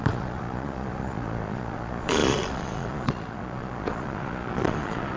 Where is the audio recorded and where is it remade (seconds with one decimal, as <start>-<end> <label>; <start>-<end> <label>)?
0.0-5.2 remade